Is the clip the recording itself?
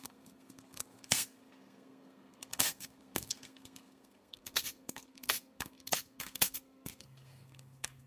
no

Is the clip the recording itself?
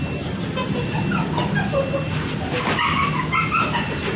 yes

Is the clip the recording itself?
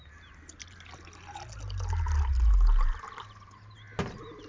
yes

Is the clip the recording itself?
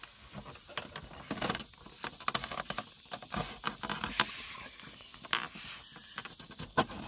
yes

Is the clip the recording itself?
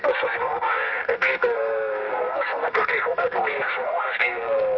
no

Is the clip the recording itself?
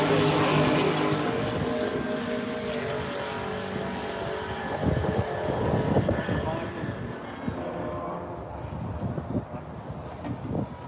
yes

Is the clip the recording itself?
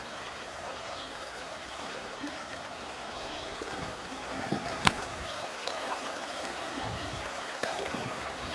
no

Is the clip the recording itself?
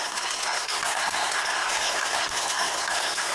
no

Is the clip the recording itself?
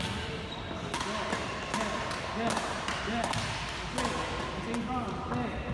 yes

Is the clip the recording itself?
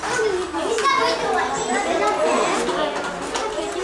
yes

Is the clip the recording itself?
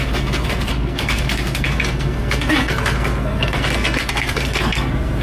no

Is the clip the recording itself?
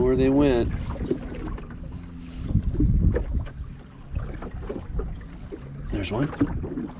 yes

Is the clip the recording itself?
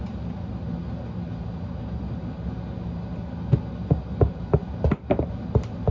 yes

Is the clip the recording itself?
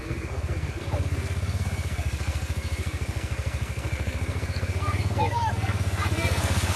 no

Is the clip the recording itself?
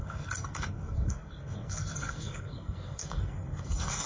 no